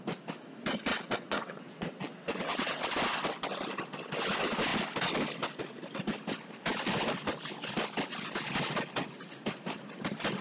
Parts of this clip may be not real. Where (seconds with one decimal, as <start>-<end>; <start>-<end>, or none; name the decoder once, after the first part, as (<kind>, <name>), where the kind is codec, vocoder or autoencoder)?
0.9-2.8 (vocoder, WaveNeXt)